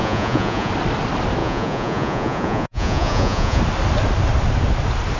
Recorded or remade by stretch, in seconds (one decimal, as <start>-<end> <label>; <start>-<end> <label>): 0.0-0.7 remade; 0.7-1.4 recorded; 1.4-3.6 remade; 3.6-5.2 recorded